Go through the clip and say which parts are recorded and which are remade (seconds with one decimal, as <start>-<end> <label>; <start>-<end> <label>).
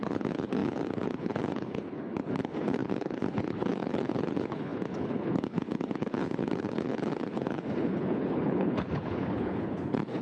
0.0-10.2 remade